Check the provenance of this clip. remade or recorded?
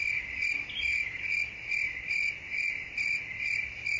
recorded